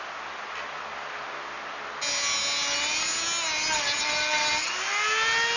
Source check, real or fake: real